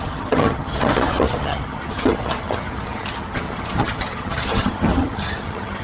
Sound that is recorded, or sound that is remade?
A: remade